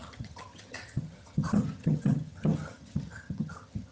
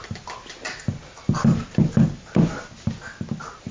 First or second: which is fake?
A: first